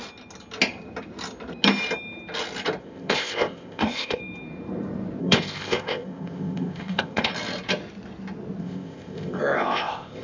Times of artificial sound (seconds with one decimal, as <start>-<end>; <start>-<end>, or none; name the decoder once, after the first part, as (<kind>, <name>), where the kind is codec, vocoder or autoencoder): 2.8-4.2 (codec, ZipCodec); 5.2-7.3; 8.6-10.2